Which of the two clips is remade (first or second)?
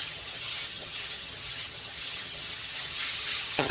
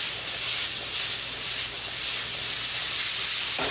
first